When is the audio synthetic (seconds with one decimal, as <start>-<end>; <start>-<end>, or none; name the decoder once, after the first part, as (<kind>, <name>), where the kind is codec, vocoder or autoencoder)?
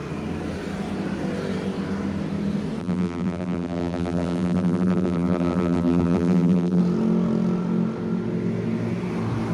2.8-6.8 (vocoder, BigVGAN v2)